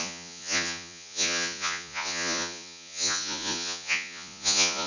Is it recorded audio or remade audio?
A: remade